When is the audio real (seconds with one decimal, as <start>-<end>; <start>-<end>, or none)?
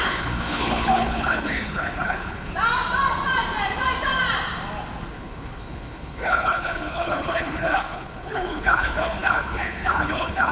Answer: 2.5-5.1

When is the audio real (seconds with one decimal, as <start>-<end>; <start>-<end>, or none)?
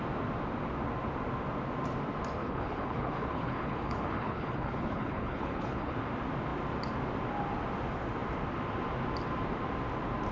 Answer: 0.0-2.4; 5.9-10.3